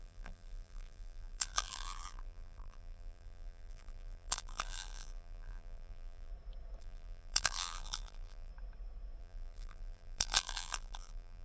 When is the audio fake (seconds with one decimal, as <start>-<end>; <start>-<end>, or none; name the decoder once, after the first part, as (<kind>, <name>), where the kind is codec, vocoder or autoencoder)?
0.0-6.3 (vocoder, BigVGAN v2); 6.8-8.5; 9.2-11.4